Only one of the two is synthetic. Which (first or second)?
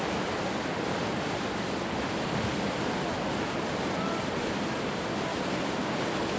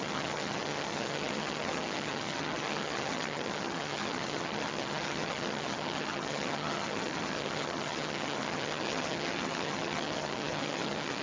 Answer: second